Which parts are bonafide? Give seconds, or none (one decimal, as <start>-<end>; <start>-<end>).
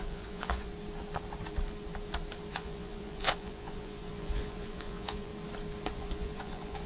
0.7-2.5; 5.3-5.9